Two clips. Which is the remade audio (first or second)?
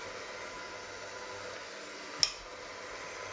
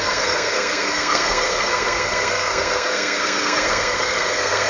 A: second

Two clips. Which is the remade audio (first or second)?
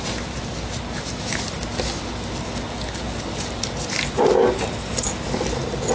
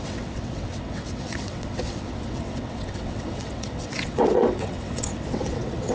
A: second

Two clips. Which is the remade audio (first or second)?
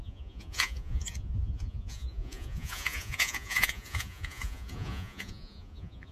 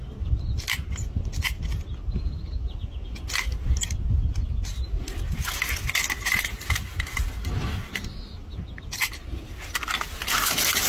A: first